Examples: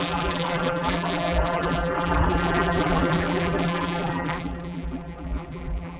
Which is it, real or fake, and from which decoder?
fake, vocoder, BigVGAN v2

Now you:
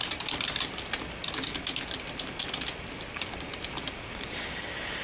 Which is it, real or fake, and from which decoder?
real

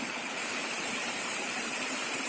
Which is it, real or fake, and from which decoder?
fake, vocoder, BigVGAN v2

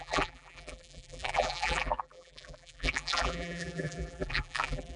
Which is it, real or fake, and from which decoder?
fake, vocoder, BigVGAN v2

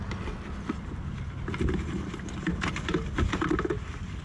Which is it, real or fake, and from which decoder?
real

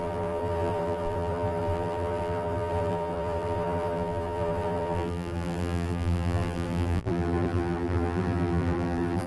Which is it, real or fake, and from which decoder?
fake, vocoder, BigVGAN v2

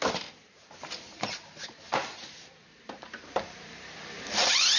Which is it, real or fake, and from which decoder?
fake, vocoder, BigVGAN v2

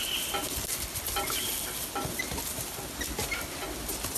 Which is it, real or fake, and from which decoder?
real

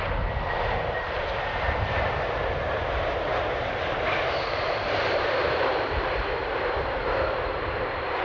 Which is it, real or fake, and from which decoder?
fake, vocoder, BigVGAN v2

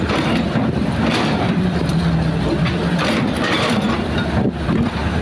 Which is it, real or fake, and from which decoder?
fake, vocoder, BigVGAN v2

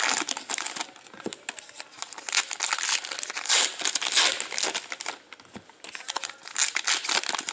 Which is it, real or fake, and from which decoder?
real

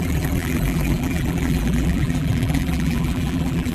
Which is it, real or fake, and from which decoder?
fake, vocoder, BigVGAN v2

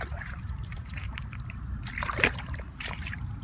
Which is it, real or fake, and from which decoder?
fake, vocoder, BigVGAN v2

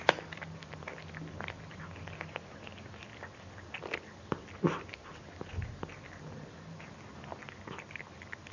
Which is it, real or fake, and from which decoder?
real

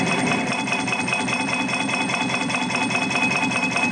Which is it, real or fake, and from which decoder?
fake, vocoder, BigVGAN v2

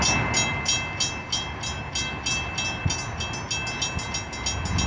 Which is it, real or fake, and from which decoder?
real